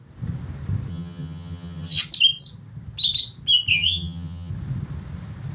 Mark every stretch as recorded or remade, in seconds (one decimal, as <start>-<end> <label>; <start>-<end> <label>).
0.0-0.9 recorded; 0.9-2.0 remade; 2.0-3.7 recorded; 3.7-4.5 remade; 4.5-5.5 recorded